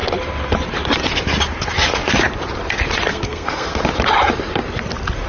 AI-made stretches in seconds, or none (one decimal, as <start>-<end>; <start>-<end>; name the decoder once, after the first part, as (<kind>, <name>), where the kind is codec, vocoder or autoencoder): 3.1-3.8 (codec, SNAC)